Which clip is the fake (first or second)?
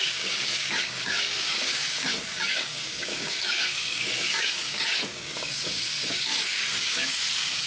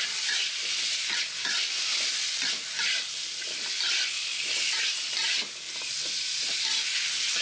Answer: first